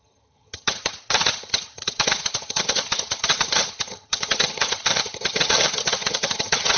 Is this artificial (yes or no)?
yes